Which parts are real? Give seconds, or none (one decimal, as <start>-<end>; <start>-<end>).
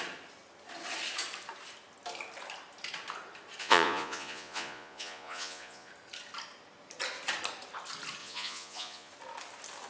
0.0-3.6; 5.9-8.2; 9.1-9.9